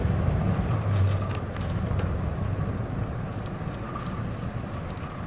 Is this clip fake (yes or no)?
no